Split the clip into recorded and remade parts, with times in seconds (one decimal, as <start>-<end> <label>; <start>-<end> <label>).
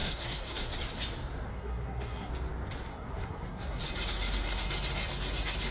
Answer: 0.0-0.7 remade; 0.7-1.5 recorded; 1.5-2.3 remade; 2.3-2.9 recorded; 2.9-3.8 remade; 3.8-5.7 recorded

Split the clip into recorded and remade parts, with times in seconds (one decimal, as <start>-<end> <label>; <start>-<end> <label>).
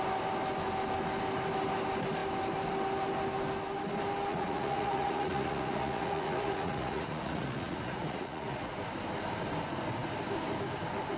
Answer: 0.0-4.3 recorded; 4.3-8.7 remade; 8.7-11.2 recorded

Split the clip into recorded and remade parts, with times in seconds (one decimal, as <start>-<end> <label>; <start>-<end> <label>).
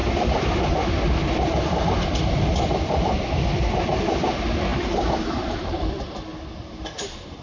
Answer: 0.0-7.4 remade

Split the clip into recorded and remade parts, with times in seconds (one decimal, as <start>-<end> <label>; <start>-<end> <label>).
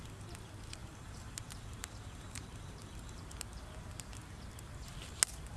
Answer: 0.0-0.8 recorded; 0.8-3.2 remade; 3.2-5.6 recorded